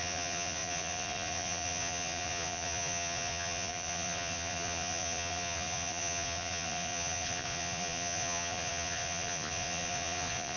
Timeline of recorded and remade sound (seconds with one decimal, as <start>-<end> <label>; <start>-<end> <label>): 0.0-10.6 remade